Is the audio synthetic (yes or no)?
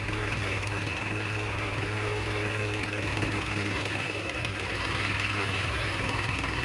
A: yes